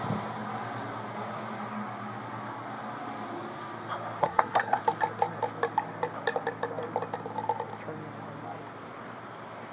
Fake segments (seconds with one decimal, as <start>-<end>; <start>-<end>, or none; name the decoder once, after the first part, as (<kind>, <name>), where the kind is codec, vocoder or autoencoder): 4.2-4.8 (codec, SNAC)